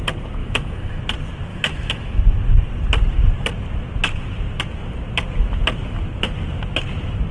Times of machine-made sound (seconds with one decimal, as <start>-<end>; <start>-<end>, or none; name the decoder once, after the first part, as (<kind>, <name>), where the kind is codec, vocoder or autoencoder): 0.4-1.0 (autoencoder, DAC-VAE); 1.5-2.2